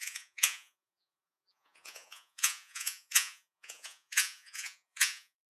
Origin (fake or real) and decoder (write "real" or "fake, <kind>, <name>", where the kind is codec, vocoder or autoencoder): fake, vocoder, Vocos